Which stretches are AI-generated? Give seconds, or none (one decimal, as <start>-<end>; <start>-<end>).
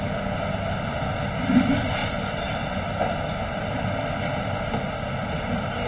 none